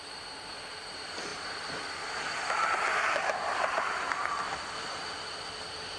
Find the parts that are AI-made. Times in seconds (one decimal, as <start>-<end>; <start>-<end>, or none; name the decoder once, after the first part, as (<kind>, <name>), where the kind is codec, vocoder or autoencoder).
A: none

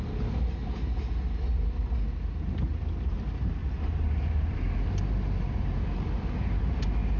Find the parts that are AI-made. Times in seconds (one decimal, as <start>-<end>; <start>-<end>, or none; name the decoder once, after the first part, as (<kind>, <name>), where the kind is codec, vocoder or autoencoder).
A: 3.6-4.9 (vocoder, BigVGAN v2)

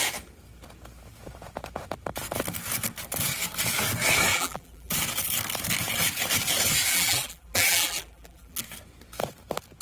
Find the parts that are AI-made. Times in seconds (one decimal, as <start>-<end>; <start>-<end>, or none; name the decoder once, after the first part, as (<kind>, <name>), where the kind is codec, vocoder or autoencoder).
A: 4.3-4.9 (vocoder, BigVGAN v2); 6.9-8.6

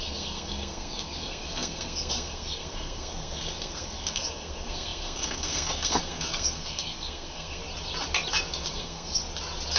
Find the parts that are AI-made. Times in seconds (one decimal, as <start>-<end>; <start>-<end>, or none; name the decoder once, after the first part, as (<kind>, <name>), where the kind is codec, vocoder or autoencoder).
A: 0.0-7.6 (codec, SNAC); 8.7-9.2

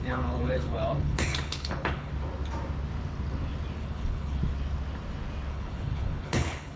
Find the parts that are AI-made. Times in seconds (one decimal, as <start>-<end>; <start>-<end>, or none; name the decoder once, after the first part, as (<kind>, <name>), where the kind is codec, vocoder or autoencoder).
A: 0.0-2.1 (codec, HILCodec); 3.8-4.4; 5.5-6.8